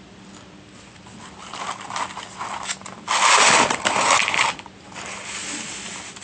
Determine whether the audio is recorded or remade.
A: recorded